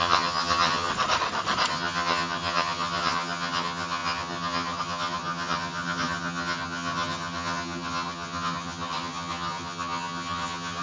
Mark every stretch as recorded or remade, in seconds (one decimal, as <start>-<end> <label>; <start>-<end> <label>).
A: 0.0-0.9 remade; 0.9-1.7 recorded; 1.7-10.8 remade